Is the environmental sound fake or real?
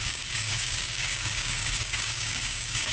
fake